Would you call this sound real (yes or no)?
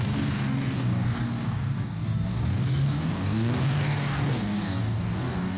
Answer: no